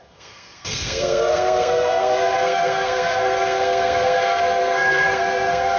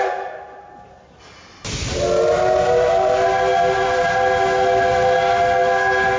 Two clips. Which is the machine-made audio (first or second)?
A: first